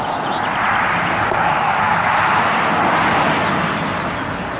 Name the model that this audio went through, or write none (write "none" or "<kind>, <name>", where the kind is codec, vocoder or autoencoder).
none